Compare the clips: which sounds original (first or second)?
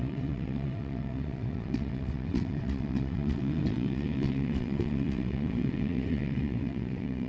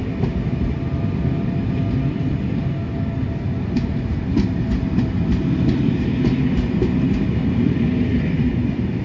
second